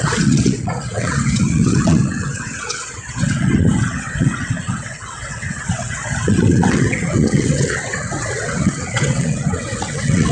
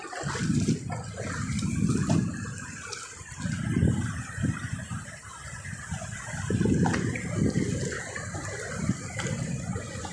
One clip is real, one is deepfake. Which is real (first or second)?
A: second